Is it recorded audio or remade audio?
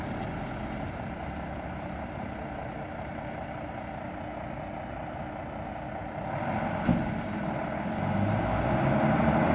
recorded